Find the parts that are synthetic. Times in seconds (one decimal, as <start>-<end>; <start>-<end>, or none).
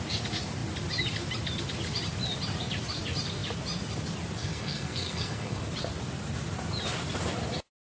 4.4-5.6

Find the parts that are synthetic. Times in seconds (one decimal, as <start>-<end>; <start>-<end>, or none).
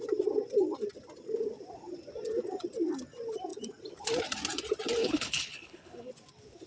5.0-6.1